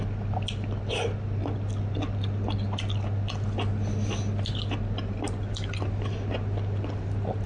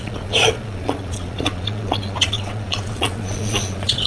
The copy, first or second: second